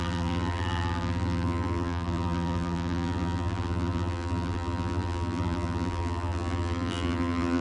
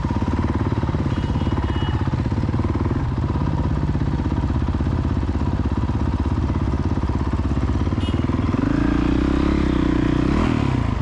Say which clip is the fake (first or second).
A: first